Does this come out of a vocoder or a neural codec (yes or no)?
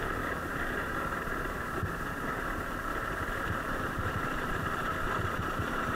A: yes